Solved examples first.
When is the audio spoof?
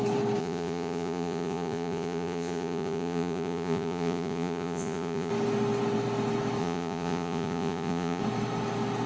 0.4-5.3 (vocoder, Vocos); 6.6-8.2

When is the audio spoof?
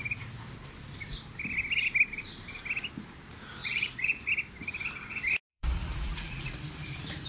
3.6-4.3 (vocoder, Vocos); 5.5-6.6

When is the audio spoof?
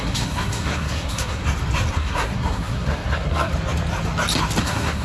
0.0-1.4 (codec, SNAC); 1.9-3.5; 4.6-5.0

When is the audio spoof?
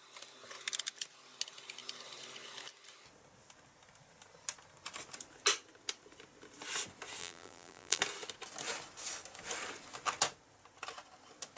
7.2-8.0 (vocoder, BigVGAN v2)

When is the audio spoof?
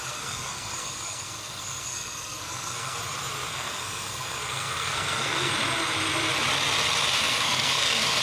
0.0-3.0 (codec, SNAC); 3.5-5.5; 7.2-8.2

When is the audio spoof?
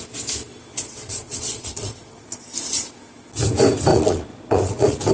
0.7-2.2 (vocoder, Vocos); 3.9-5.1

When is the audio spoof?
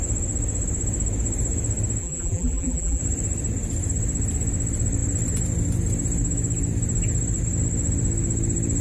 2.0-3.0 (vocoder, BigVGAN v2)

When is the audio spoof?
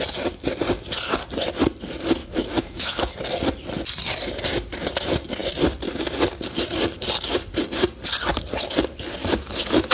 2.2-3.1 (autoencoder, DAC-VAE); 9.2-9.9